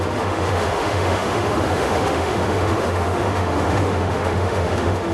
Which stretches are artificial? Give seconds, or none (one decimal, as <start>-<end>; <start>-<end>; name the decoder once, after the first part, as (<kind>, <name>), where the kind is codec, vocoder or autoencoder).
0.0-5.1 (autoencoder, DAC-VAE)